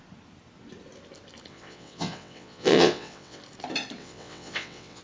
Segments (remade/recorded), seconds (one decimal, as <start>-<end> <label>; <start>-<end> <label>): 0.0-1.5 recorded; 1.5-3.4 remade; 3.4-4.0 recorded; 4.0-5.0 remade